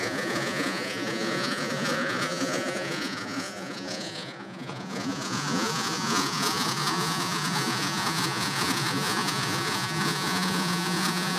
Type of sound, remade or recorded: remade